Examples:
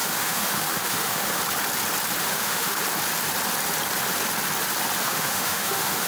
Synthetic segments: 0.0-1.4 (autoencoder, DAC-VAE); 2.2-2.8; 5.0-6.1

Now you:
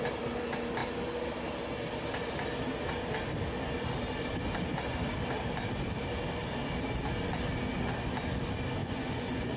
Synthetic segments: 8.8-9.6 (vocoder, Vocos)